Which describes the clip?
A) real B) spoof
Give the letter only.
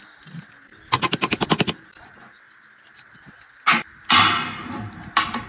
A